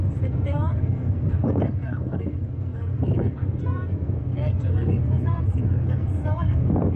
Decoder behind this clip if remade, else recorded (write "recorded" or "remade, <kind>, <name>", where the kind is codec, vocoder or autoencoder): remade, codec, SNAC